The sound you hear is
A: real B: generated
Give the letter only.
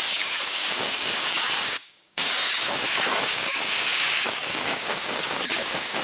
B